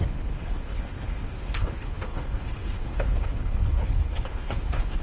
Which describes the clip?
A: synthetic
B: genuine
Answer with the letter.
A